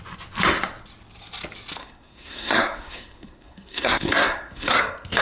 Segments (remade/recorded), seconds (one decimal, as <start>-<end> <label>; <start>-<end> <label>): 0.0-1.8 recorded; 1.8-4.8 remade; 4.8-5.2 recorded